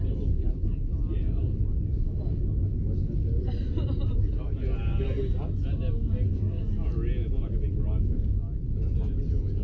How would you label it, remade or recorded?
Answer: recorded